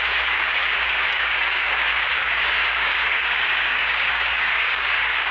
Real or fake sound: fake